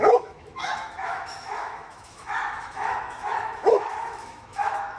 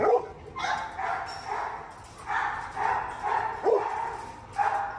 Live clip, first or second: second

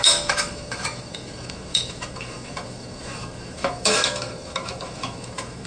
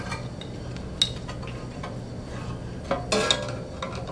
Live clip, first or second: second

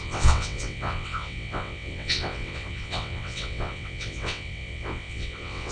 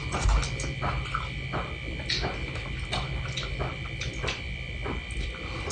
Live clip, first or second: second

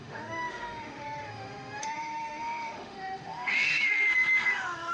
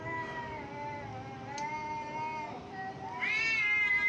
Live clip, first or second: second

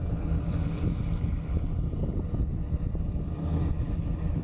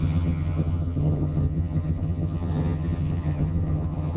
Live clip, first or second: first